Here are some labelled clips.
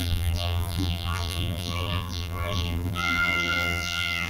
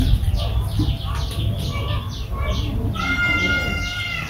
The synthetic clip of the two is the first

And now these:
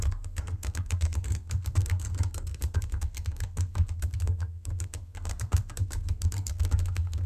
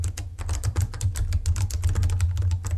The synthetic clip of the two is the first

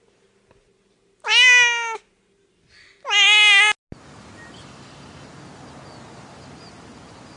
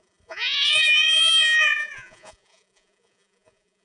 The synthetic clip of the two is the second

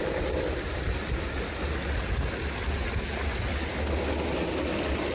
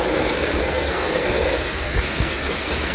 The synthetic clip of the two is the second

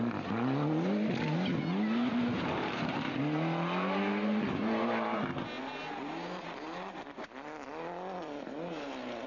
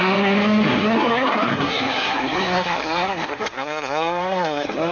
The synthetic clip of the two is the second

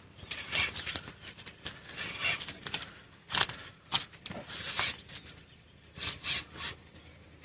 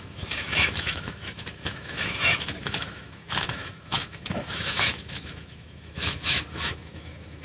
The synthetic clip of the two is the second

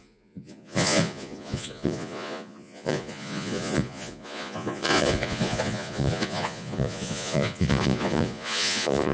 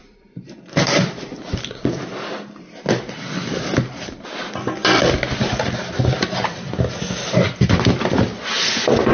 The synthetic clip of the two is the first